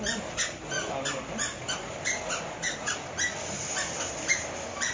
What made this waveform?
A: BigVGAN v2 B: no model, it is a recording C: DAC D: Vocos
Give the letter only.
B